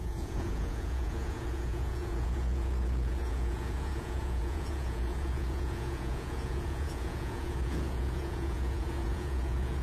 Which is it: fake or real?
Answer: fake